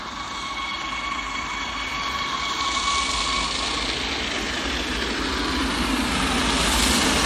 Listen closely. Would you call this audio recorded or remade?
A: recorded